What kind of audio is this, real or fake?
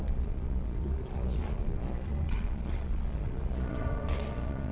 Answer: fake